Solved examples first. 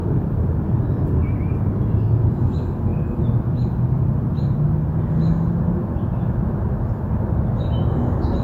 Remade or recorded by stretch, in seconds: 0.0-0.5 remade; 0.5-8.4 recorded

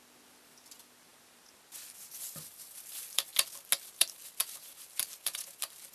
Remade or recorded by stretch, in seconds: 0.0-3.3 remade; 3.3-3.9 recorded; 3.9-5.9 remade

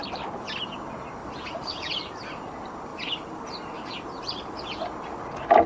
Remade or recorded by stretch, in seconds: 0.0-1.2 recorded; 1.2-2.0 remade; 2.0-2.9 recorded; 2.9-5.2 remade; 5.2-5.7 recorded

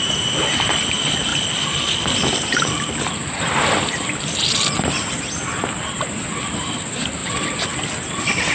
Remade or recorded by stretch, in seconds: 0.0-1.3 remade; 1.3-6.4 recorded; 6.4-7.2 remade; 7.2-8.1 recorded; 8.1-8.5 remade

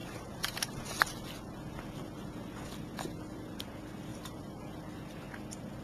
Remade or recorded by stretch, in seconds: 0.0-0.6 remade; 0.6-4.1 recorded; 4.1-4.6 remade; 4.6-5.8 recorded

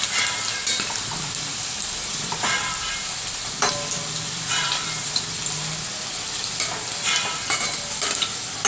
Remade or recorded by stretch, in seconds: 0.0-1.5 recorded; 1.5-5.2 remade; 5.2-8.7 recorded

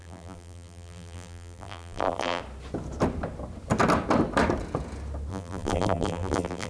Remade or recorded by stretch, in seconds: 0.0-2.4 remade; 2.4-5.3 recorded; 5.3-6.7 remade